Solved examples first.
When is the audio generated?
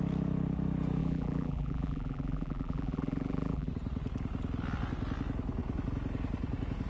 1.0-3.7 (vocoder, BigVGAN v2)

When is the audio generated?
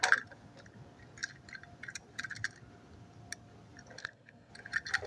4.0-4.5 (codec, SNAC)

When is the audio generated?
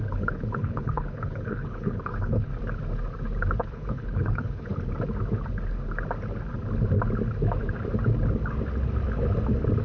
0.0-2.5 (codec, HILCodec); 3.6-4.7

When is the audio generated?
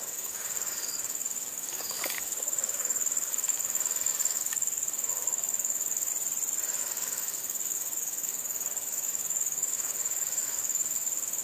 0.0-6.1 (codec, DAC); 6.8-11.4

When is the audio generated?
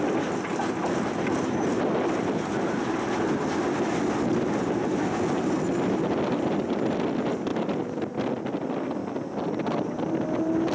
none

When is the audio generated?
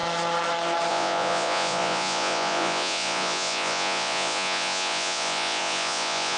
0.9-6.4 (vocoder, Vocos)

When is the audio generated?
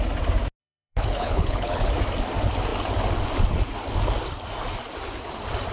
0.6-1.9 (codec, HILCodec)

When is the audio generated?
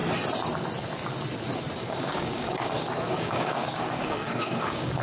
1.8-5.0 (codec, DAC)